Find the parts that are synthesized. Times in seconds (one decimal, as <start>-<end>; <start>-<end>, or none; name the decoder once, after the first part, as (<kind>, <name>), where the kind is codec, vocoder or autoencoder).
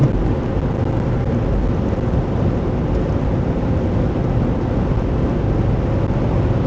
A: none